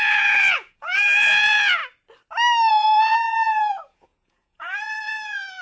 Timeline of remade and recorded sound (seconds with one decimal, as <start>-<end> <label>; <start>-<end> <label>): 0.0-1.8 remade; 1.8-2.7 recorded; 2.7-5.6 remade